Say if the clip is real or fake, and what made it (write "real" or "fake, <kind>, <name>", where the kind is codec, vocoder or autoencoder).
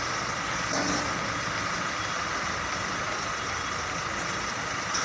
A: real